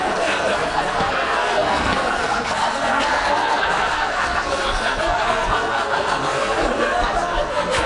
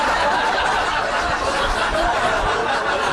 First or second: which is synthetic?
first